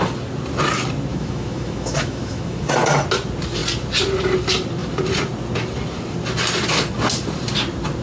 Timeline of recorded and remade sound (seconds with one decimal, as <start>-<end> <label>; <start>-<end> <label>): 0.0-1.1 recorded; 1.1-2.7 remade; 2.7-8.0 recorded